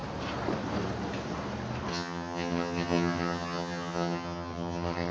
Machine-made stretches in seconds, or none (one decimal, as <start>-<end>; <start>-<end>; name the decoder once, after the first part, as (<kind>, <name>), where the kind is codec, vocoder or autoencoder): 1.9-5.1 (vocoder, HiFi-GAN)